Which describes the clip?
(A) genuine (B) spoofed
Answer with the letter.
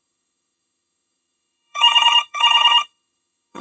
B